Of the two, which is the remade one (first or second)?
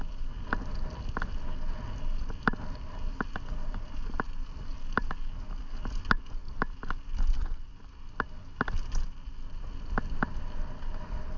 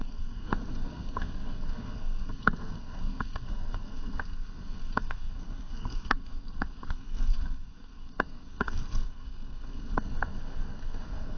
second